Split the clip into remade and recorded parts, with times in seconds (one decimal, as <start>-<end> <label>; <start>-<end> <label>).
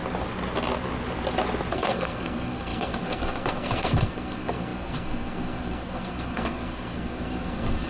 0.0-1.7 recorded; 1.7-7.9 remade